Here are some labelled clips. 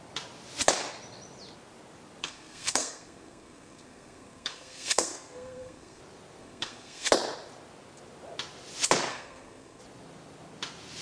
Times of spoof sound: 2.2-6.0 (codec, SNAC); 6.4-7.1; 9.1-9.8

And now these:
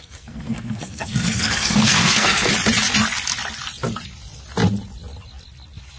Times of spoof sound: 0.0-2.5 (codec, SNAC)

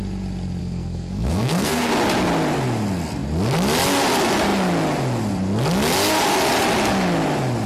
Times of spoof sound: 0.6-1.9 (codec, SNAC)

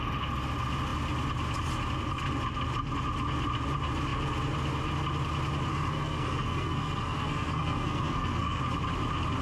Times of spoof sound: 5.7-8.6 (codec, SNAC)

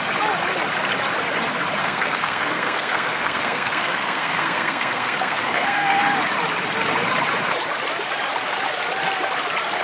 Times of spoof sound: 1.8-6.0 (codec, SNAC)